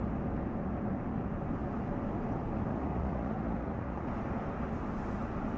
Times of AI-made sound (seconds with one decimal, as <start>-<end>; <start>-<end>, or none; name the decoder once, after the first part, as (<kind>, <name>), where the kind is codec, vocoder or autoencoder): 2.7-4.1 (vocoder, Vocos)